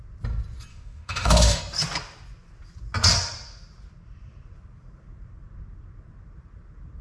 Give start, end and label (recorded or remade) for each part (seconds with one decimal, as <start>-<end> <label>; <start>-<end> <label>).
0.0-0.7 recorded; 0.7-1.6 remade; 1.6-7.0 recorded

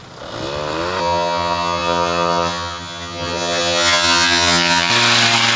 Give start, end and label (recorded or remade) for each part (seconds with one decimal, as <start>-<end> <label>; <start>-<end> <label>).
0.0-1.0 recorded; 1.0-4.9 remade; 4.9-5.6 recorded

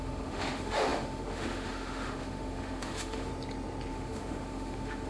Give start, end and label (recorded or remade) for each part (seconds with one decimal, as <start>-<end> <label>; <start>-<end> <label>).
0.0-3.3 remade; 3.3-3.9 recorded; 3.9-5.1 remade

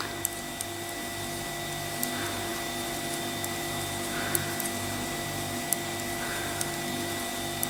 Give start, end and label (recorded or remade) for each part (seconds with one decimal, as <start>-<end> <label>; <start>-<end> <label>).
0.0-7.7 recorded

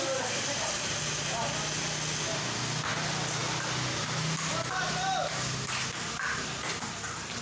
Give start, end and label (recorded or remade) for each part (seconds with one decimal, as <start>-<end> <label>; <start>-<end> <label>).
0.0-7.4 recorded

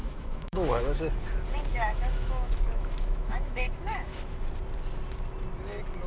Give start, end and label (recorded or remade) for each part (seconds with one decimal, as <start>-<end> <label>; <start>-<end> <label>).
0.0-1.1 remade; 1.1-1.7 recorded; 1.7-4.4 remade; 4.4-6.1 recorded

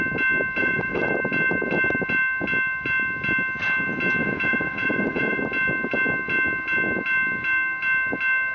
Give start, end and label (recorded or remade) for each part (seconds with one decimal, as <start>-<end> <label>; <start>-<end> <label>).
0.0-0.6 recorded; 0.6-1.1 remade; 1.1-4.2 recorded; 4.2-5.4 remade; 5.4-8.5 recorded

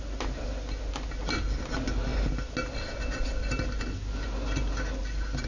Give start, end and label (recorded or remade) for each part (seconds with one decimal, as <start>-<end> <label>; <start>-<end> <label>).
0.0-5.5 recorded